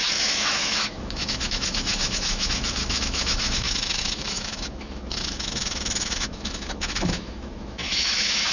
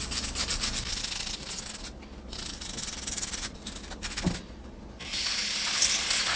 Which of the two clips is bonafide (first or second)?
second